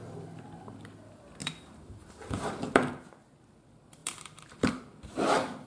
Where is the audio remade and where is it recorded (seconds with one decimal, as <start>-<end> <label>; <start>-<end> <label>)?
0.0-1.4 recorded; 1.4-2.9 remade; 2.9-4.0 recorded; 4.0-4.7 remade; 4.7-5.7 recorded